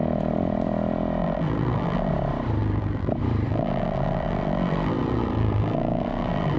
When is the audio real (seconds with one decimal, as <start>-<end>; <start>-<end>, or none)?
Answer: 0.0-1.2; 2.1-2.6; 3.1-3.5